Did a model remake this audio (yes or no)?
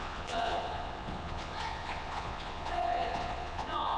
yes